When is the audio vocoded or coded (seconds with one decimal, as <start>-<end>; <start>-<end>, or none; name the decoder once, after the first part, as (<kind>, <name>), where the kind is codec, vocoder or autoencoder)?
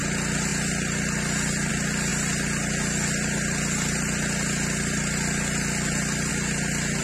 none